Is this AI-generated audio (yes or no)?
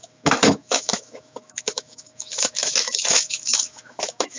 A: yes